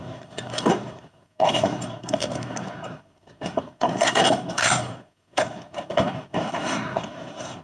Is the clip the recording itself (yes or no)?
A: no